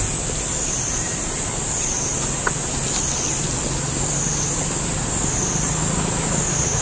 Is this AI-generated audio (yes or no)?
no